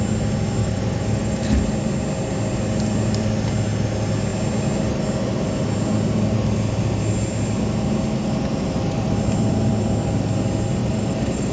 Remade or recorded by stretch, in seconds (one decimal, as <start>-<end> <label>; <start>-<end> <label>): 0.0-0.6 recorded; 0.6-1.6 remade; 1.6-10.8 recorded; 10.8-11.5 remade